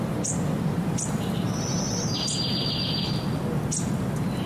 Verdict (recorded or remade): recorded